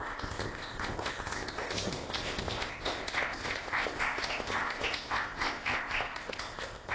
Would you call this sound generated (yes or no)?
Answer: yes